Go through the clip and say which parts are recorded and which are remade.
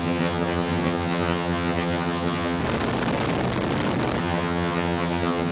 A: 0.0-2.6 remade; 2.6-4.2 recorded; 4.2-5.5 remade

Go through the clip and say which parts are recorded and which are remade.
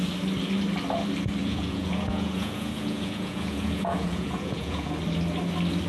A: 0.0-1.4 recorded; 1.4-4.9 remade; 4.9-5.9 recorded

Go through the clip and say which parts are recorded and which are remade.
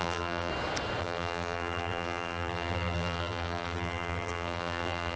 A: 0.0-0.5 remade; 0.5-1.0 recorded; 1.0-5.2 remade